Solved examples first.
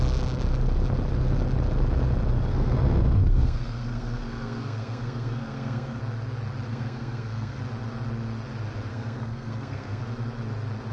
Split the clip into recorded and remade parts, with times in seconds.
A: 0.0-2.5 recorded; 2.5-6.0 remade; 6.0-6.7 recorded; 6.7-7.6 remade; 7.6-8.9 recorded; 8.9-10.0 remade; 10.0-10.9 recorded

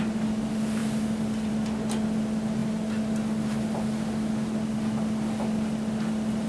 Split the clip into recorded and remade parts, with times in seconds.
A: 0.0-6.5 recorded

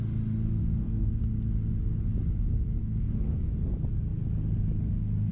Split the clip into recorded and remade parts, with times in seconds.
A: 0.0-0.6 recorded; 0.6-1.2 remade; 1.2-2.8 recorded; 2.8-3.5 remade; 3.5-5.3 recorded

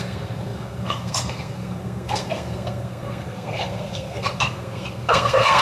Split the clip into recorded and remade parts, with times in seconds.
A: 0.0-5.6 remade

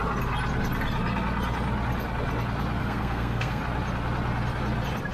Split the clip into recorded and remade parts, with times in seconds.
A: 0.0-2.8 recorded; 2.8-3.6 remade; 3.6-5.1 recorded

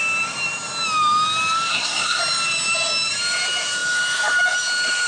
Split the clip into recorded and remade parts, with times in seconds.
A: 0.0-1.7 recorded; 1.7-2.2 remade; 2.2-5.1 recorded